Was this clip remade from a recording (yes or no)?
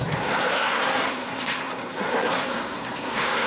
yes